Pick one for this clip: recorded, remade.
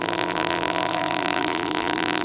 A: remade